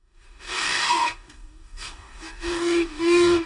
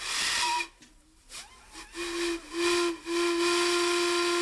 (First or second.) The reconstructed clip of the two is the first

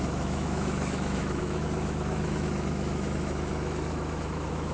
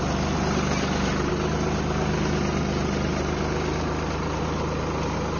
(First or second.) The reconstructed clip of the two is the first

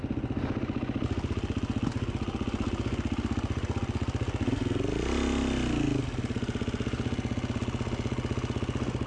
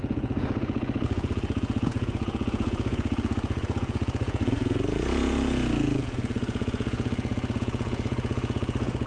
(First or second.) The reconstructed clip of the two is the second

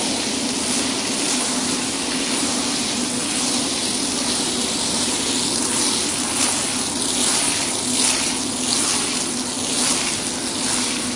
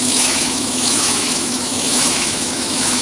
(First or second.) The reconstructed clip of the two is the second